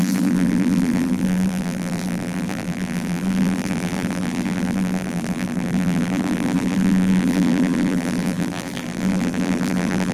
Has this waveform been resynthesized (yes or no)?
yes